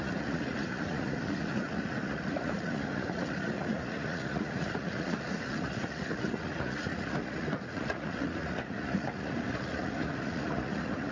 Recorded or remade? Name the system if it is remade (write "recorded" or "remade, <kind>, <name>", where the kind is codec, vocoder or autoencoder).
remade, vocoder, Vocos